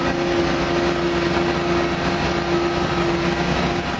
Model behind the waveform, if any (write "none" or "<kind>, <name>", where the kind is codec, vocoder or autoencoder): none